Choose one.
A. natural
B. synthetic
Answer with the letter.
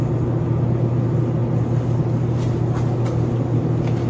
A